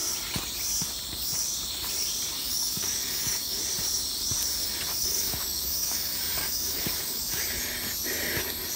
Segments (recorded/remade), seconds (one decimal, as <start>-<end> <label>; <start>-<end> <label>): 0.0-2.4 recorded; 2.4-3.6 remade; 3.6-5.0 recorded; 5.0-7.6 remade; 7.6-8.8 recorded